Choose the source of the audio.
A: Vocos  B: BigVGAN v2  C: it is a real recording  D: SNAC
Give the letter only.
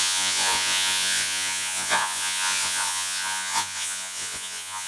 A